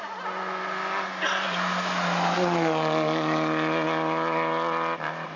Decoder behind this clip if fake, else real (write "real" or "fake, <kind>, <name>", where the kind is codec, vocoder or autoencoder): real